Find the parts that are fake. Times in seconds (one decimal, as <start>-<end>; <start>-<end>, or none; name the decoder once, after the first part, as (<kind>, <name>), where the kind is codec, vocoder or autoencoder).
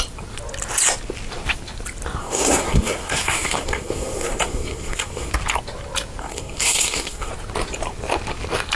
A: 2.2-5.3 (codec, SNAC); 6.2-7.3